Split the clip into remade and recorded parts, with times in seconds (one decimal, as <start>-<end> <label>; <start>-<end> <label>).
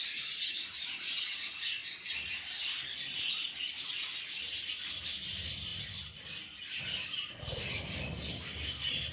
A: 0.0-9.1 recorded